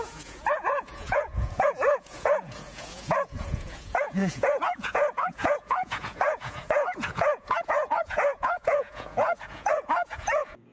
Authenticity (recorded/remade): remade